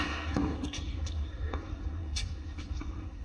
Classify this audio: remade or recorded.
remade